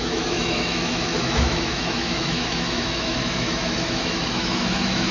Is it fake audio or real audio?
fake